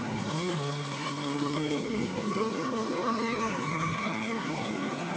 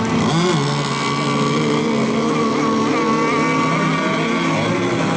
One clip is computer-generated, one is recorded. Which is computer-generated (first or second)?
first